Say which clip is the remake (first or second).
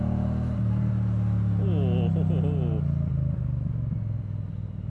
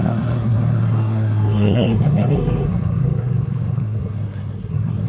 second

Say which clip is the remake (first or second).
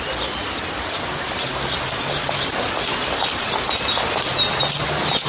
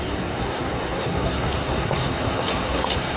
second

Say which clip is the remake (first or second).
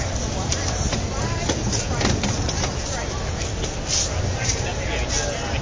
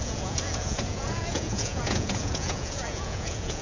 second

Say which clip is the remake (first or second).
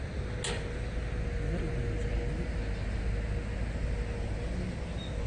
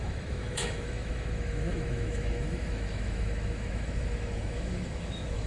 second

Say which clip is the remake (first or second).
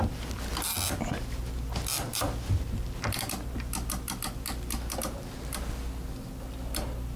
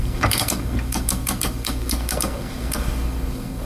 second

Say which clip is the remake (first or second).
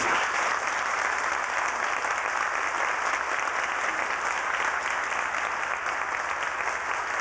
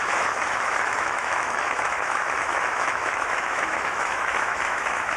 second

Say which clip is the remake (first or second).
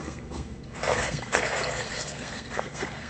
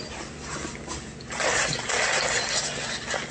first